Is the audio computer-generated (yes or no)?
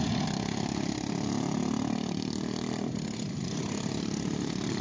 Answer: no